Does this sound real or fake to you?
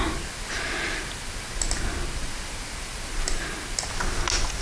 real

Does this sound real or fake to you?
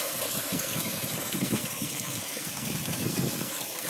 fake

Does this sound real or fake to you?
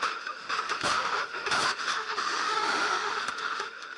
fake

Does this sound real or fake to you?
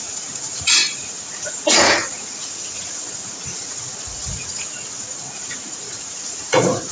fake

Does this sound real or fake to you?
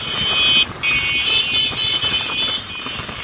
real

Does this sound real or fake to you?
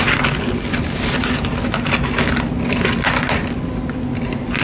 real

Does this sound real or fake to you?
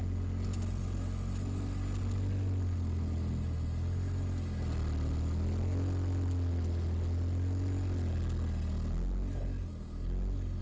real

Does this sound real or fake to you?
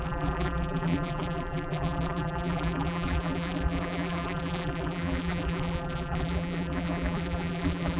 fake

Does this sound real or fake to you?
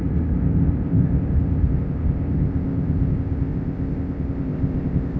fake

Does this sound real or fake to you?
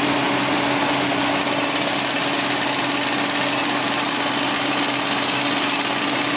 real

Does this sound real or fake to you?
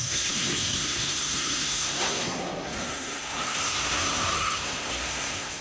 fake